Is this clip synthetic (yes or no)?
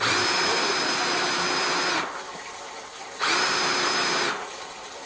yes